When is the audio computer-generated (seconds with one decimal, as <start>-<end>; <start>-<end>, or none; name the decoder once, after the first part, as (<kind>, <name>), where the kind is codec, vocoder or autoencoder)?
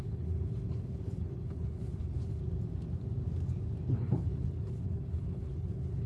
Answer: 0.0-2.4 (codec, HILCodec); 3.9-6.1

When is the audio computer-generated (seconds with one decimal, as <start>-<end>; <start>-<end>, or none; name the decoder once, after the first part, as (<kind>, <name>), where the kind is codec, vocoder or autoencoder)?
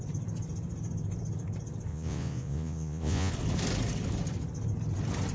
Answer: 1.9-3.3 (vocoder, Vocos)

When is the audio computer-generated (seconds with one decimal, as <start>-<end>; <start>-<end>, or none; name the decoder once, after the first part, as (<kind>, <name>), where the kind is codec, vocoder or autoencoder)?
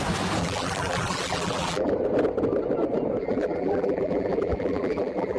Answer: 0.4-1.9 (vocoder, BigVGAN v2); 3.2-5.4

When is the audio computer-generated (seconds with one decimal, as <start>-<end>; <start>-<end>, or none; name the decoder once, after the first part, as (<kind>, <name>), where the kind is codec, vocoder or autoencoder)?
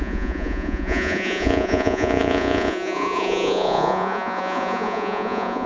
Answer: 0.0-5.7 (vocoder, Vocos)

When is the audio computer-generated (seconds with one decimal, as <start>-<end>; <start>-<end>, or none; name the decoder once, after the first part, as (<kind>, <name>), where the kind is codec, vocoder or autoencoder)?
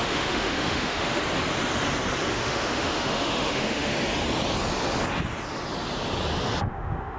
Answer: 0.0-1.2 (autoencoder, DAC-VAE); 2.3-3.9; 6.6-7.2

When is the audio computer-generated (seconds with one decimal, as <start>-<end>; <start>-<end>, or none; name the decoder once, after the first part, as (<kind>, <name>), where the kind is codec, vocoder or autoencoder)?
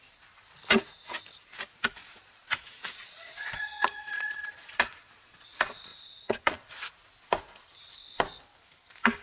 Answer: 2.0-5.5 (vocoder, Vocos); 5.9-6.6